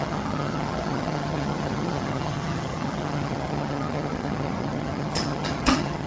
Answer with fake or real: fake